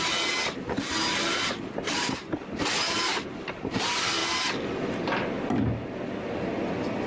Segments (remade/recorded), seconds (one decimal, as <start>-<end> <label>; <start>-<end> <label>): 0.0-7.1 recorded